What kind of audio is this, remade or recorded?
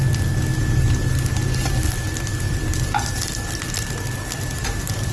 recorded